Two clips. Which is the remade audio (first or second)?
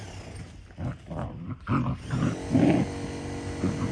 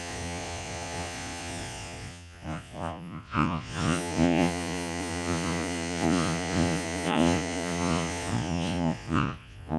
second